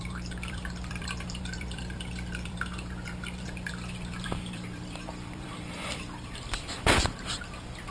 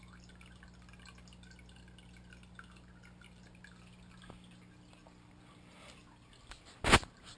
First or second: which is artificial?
first